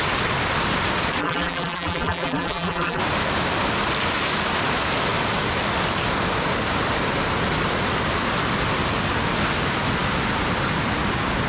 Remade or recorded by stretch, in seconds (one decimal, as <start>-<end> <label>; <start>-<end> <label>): 0.0-1.2 recorded; 1.2-3.0 remade; 3.0-11.5 recorded